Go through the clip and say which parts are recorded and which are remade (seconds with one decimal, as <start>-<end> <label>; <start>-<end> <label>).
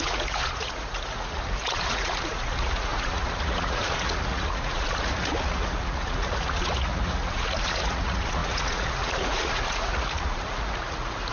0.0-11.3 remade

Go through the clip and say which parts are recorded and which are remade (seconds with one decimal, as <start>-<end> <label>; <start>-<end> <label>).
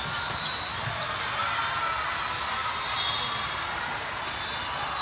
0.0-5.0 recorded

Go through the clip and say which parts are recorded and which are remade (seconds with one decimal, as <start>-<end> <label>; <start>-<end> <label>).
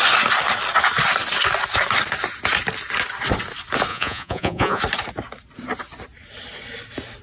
0.0-3.9 recorded; 3.9-4.8 remade; 4.8-7.2 recorded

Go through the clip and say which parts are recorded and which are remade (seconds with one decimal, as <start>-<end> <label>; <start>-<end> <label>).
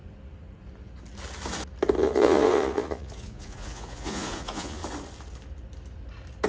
0.0-2.0 recorded; 2.0-4.8 remade; 4.8-6.5 recorded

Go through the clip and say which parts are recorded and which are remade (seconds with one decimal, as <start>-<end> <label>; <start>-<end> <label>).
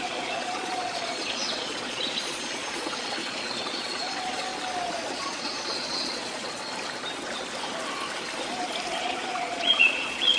0.0-4.5 remade; 4.5-5.1 recorded; 5.1-6.7 remade; 6.7-9.0 recorded; 9.0-10.4 remade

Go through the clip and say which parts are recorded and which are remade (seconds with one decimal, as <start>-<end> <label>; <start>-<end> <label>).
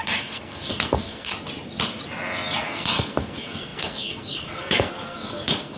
0.0-1.3 remade; 1.3-2.6 recorded; 2.6-5.8 remade